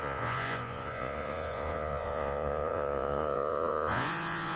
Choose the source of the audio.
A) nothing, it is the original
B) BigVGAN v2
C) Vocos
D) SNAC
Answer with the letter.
C